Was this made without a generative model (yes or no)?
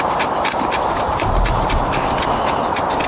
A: yes